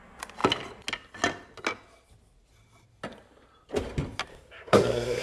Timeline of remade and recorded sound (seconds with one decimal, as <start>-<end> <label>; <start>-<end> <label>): 0.0-4.3 recorded; 4.3-5.2 remade